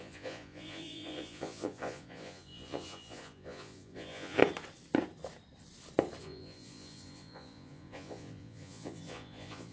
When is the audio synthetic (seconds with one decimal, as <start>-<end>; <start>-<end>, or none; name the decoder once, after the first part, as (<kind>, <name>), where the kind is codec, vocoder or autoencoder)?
0.0-4.4 (vocoder, Vocos); 6.2-9.7